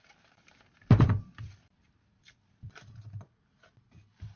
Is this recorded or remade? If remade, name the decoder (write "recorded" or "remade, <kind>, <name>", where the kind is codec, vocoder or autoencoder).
recorded